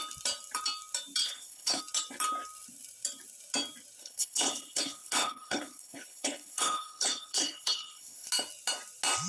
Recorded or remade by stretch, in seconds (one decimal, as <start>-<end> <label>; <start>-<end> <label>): 0.0-1.2 recorded; 1.2-1.8 remade; 1.8-4.0 recorded; 4.0-8.3 remade; 8.3-9.3 recorded